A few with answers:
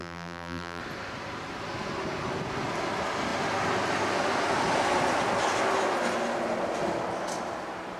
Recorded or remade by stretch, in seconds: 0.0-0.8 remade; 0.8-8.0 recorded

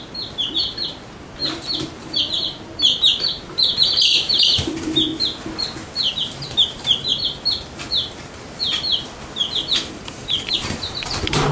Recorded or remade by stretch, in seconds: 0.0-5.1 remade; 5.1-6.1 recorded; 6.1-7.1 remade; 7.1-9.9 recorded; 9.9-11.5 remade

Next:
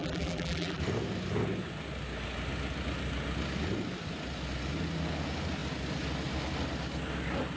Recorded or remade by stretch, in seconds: 0.0-0.8 remade; 0.8-7.6 recorded

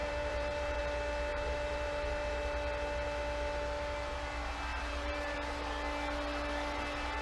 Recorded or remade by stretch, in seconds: 0.0-0.8 remade; 0.8-1.3 recorded; 1.3-2.3 remade; 2.3-4.7 recorded; 4.7-5.6 remade; 5.6-7.2 recorded

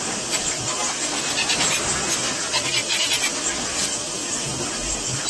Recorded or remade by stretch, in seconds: 0.0-0.8 remade; 0.8-2.5 recorded; 2.5-4.2 remade; 4.2-4.7 recorded; 4.7-5.3 remade

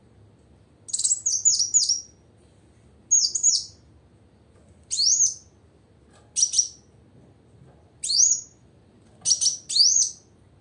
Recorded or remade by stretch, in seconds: 0.0-10.6 recorded